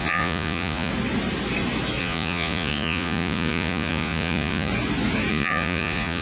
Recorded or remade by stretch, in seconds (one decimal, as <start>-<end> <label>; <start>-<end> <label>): 0.0-0.9 remade; 0.9-2.0 recorded; 2.0-4.7 remade; 4.7-5.3 recorded; 5.3-6.2 remade